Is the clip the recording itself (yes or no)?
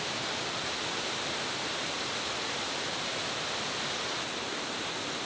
yes